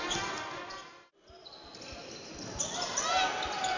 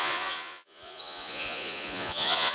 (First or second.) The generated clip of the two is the second